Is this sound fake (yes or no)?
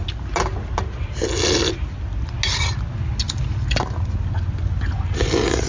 no